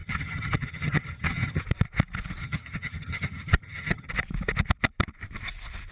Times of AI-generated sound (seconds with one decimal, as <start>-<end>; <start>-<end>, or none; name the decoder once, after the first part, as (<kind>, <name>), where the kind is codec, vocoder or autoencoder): 0.0-1.6 (vocoder, HiFi-GAN); 2.4-4.1